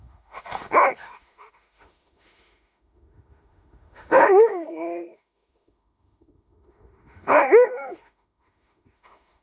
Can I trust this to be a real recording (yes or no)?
no